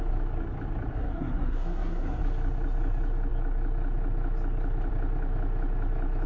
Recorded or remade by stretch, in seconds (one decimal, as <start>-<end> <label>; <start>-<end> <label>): 0.0-0.9 recorded; 0.9-2.2 remade; 2.2-6.3 recorded